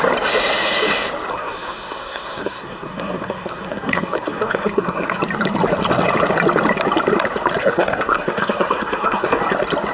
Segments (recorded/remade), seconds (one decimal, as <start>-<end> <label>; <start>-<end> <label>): 0.0-1.3 recorded; 1.3-5.2 remade; 5.2-7.6 recorded; 7.6-9.4 remade; 9.4-9.9 recorded